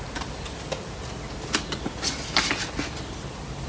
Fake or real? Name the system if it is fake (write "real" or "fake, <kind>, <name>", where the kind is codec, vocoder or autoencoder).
real